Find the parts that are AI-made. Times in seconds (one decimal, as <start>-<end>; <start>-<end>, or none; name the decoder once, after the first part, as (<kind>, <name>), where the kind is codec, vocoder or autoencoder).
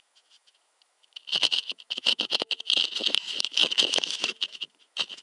0.0-5.2 (autoencoder, DAC-VAE)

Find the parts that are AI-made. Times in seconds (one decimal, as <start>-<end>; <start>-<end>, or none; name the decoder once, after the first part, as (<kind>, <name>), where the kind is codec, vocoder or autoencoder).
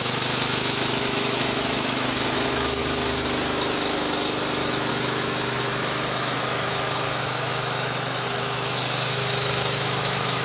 0.0-2.8 (autoencoder, DAC-VAE); 4.9-10.4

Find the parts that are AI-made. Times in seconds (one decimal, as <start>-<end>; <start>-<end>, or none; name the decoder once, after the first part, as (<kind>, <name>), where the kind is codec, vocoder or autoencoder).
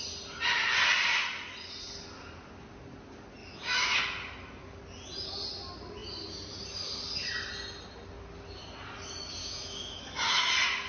3.4-4.0 (autoencoder, DAC-VAE); 9.4-10.5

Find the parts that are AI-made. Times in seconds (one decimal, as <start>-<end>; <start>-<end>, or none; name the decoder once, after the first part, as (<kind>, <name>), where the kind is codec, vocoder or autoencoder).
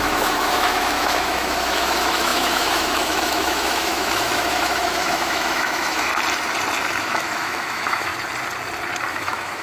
0.0-6.1 (autoencoder, DAC-VAE); 7.0-8.1; 9.1-9.6